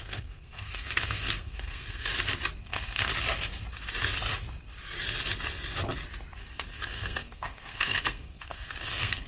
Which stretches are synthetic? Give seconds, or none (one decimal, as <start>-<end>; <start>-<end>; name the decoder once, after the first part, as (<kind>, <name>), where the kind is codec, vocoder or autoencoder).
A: 0.0-2.1 (codec, SNAC); 2.6-3.1; 6.7-9.3